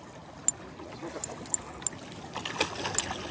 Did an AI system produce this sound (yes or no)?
no